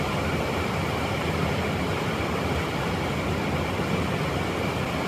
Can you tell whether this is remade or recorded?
recorded